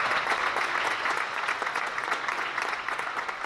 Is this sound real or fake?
fake